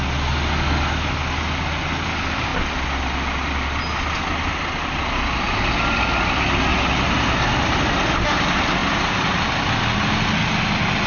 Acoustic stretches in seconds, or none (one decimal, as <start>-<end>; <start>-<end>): 0.0-6.7; 7.5-8.8; 9.4-11.1